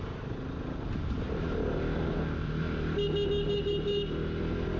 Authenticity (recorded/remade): recorded